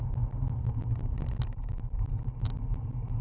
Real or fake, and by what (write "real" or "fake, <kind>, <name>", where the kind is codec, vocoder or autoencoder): real